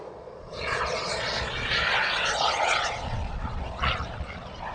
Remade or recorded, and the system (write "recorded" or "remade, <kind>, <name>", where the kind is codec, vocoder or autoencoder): remade, vocoder, Vocos